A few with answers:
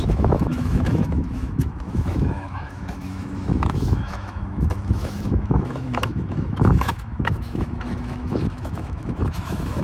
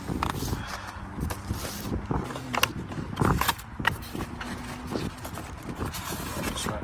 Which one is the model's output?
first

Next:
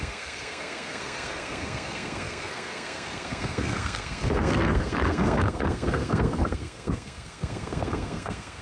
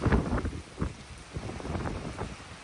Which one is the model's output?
first